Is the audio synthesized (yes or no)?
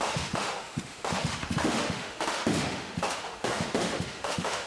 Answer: yes